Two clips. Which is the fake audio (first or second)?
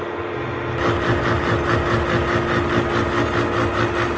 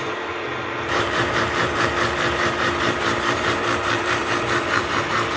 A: second